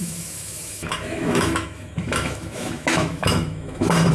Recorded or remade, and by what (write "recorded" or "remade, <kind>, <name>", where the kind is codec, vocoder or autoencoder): remade, autoencoder, DAC-VAE